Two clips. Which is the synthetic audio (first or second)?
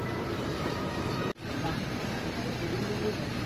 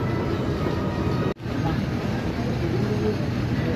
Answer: first